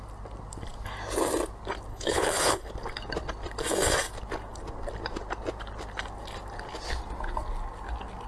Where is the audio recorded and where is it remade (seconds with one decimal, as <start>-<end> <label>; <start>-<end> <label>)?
0.0-1.9 recorded; 1.9-2.7 remade; 2.7-8.3 recorded